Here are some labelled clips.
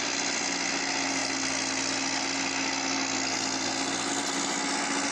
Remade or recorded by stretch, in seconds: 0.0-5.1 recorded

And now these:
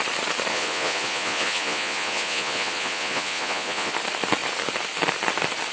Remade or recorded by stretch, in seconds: 0.0-0.5 recorded; 0.5-3.9 remade; 3.9-5.7 recorded

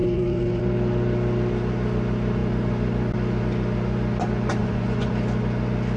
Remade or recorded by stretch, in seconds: 0.0-0.6 remade; 0.6-4.6 recorded; 4.6-5.1 remade; 5.1-6.0 recorded

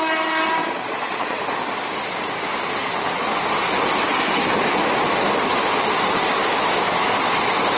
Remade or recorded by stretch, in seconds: 0.0-0.6 recorded; 0.6-1.4 remade; 1.4-7.8 recorded